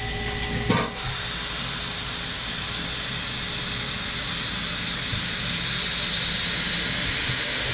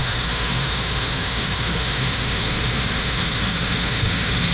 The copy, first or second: second